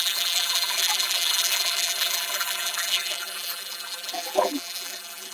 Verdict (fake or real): fake